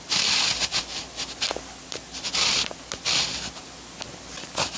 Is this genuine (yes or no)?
yes